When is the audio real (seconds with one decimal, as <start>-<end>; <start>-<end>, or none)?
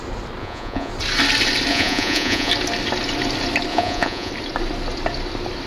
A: 0.0-0.4; 0.9-1.7; 2.5-3.7; 4.3-5.7